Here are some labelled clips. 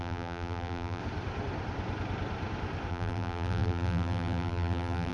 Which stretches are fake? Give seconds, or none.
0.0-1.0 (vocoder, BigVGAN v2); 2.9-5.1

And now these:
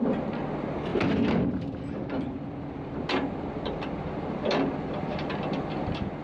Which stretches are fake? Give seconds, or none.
0.9-3.1 (vocoder, BigVGAN v2)

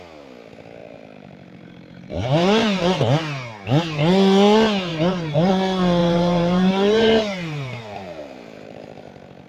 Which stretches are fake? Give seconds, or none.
0.8-2.8 (vocoder, BigVGAN v2); 4.9-5.5; 6.0-9.1

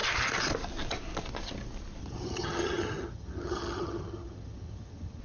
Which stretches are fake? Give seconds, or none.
2.0-5.2 (vocoder, HiFi-GAN)

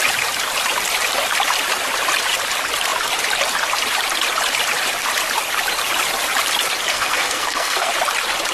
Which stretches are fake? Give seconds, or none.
6.9-7.9 (codec, SNAC)

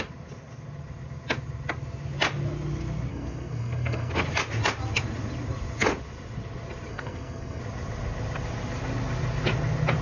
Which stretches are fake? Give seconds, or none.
3.1-4.1 (codec, SNAC); 6.9-7.6